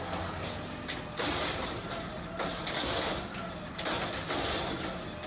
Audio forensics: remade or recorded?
recorded